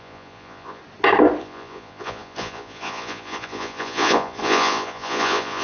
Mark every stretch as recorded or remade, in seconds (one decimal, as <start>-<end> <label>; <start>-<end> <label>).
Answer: 0.0-0.8 remade; 0.8-1.4 recorded; 1.4-5.6 remade